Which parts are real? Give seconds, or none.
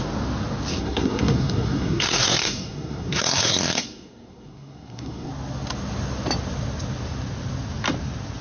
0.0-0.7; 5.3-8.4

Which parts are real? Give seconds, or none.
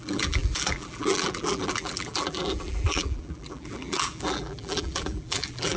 none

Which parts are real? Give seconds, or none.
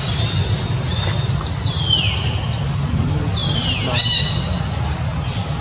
0.0-0.9; 1.8-5.6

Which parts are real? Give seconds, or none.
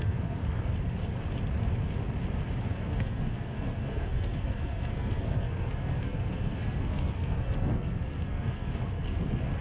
0.4-2.7